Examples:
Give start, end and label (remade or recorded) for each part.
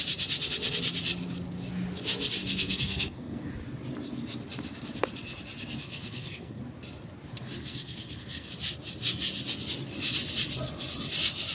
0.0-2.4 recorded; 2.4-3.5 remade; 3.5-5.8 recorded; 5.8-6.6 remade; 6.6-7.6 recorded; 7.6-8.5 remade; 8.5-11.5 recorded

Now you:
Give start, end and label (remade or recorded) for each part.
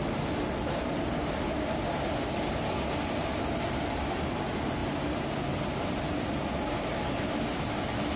0.0-8.2 recorded